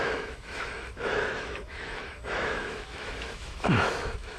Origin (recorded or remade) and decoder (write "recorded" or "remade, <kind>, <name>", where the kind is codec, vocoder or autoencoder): remade, autoencoder, DAC-VAE